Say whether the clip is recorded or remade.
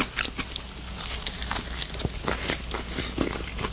recorded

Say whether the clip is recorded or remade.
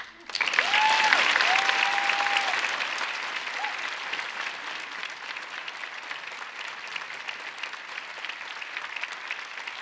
recorded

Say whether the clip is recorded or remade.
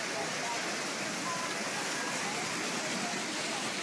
recorded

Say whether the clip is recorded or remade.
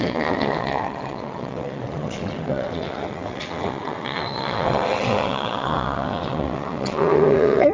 remade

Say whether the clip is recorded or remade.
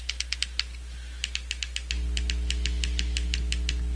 recorded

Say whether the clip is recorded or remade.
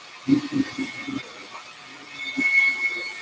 recorded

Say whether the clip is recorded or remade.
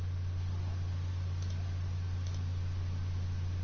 recorded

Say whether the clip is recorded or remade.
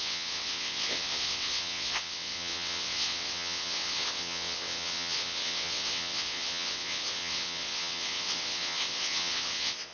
remade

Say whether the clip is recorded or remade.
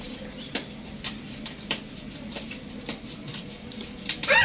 recorded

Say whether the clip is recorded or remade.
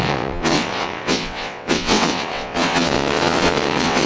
remade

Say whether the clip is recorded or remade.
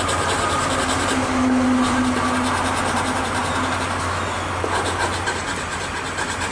recorded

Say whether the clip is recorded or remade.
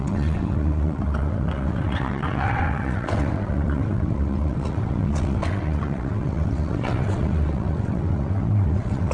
remade